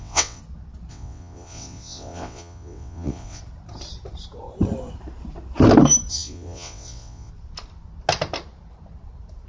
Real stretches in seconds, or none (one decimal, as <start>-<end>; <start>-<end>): 0.4-0.9; 3.4-6.1; 7.3-9.5